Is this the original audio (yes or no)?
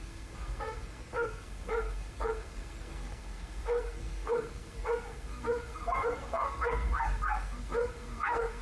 no